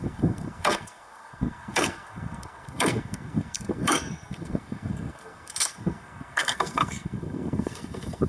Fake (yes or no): yes